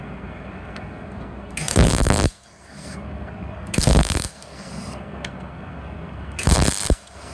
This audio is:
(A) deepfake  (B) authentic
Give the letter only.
A